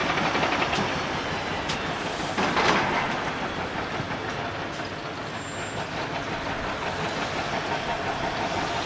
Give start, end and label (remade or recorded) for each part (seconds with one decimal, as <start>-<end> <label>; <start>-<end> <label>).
0.0-8.9 recorded